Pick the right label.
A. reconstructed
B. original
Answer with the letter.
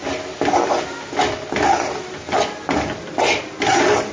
B